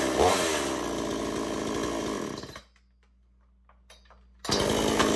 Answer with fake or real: real